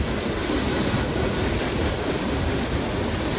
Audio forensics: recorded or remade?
recorded